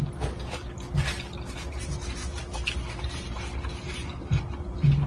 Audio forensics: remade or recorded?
recorded